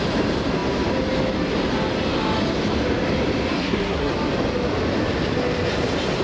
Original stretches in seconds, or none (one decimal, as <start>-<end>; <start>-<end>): 0.0-3.5; 4.1-6.2